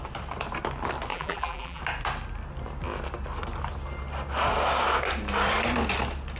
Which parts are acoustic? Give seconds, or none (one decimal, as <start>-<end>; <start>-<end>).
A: 0.0-1.1; 1.8-6.4